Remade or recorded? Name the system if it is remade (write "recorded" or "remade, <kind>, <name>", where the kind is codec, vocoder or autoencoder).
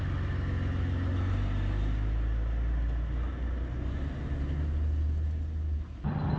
recorded